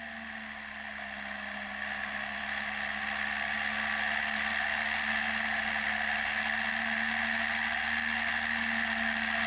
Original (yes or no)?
yes